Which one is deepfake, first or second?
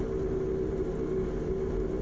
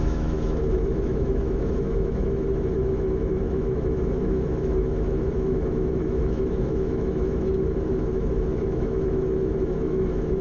second